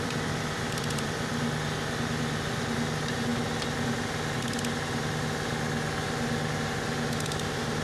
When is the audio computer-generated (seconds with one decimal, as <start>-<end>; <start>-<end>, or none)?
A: 0.0-1.3; 2.6-3.3